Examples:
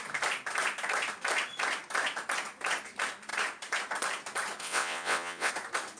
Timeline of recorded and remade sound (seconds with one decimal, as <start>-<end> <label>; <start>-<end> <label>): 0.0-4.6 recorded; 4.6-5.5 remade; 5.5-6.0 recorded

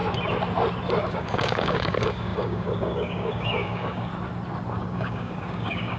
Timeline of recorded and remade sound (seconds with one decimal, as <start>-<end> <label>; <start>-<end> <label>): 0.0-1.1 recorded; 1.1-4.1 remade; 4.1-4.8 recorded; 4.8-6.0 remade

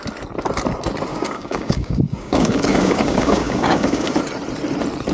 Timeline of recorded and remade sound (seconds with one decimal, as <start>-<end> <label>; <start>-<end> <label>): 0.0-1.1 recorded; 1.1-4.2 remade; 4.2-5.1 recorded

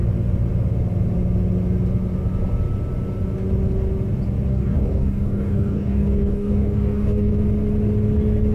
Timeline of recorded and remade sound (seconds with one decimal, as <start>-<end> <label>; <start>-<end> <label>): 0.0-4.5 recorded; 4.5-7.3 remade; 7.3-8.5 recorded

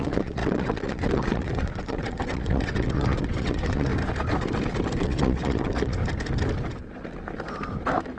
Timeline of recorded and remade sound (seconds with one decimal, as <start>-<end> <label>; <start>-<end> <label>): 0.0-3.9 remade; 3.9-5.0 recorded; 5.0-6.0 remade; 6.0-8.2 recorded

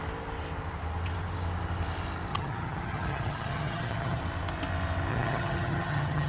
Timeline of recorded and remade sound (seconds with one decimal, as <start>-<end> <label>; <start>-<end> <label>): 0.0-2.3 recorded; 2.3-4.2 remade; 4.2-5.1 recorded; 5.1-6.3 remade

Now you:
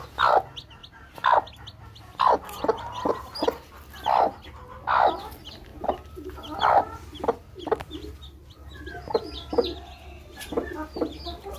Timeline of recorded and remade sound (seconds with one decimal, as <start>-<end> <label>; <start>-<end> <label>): 0.0-11.6 recorded